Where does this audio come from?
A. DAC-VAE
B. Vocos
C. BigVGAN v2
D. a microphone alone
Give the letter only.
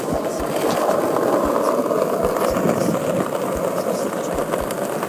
D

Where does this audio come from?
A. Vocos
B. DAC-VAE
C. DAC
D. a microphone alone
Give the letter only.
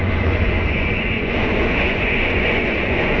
A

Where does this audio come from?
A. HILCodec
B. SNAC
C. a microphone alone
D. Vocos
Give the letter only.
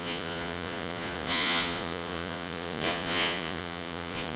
D